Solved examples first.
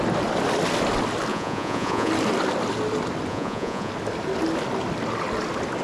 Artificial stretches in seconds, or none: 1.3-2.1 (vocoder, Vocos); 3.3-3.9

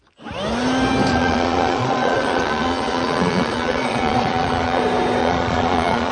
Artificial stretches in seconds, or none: 1.1-4.8 (vocoder, Vocos); 5.2-6.1

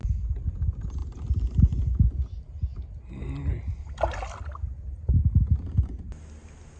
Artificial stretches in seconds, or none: none

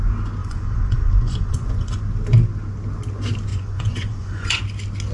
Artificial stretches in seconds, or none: 0.4-2.0 (vocoder, Vocos); 3.5-4.6

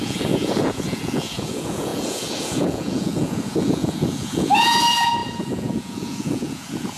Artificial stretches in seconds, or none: 0.0-7.0 (vocoder, Vocos)